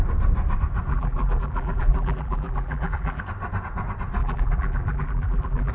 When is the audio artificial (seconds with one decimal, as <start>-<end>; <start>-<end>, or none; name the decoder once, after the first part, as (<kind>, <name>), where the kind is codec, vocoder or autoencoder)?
0.9-3.2 (vocoder, BigVGAN v2); 4.2-5.7